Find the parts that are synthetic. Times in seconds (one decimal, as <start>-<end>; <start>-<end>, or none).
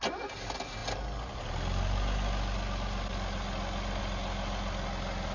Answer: none